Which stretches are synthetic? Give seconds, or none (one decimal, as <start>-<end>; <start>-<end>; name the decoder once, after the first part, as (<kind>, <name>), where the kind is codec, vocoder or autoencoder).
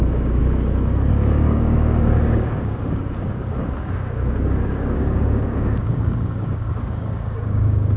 0.0-0.4 (codec, DAC); 1.1-8.0